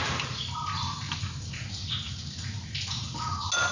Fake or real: real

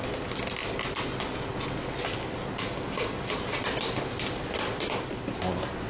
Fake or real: real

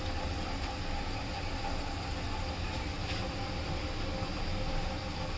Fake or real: real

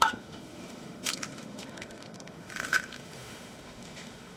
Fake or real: fake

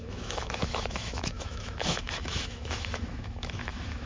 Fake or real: fake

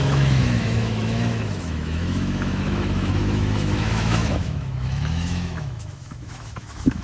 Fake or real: fake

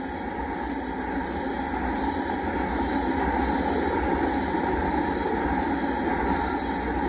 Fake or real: real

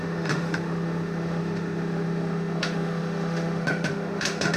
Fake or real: fake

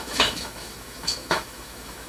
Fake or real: fake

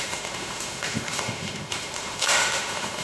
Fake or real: fake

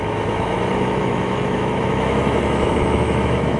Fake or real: fake